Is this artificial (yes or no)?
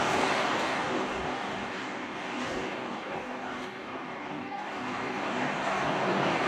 yes